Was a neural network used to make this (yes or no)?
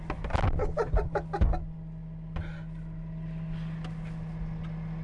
no